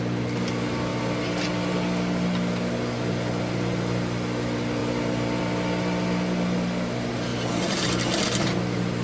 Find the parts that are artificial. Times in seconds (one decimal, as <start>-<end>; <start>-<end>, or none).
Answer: 4.8-5.4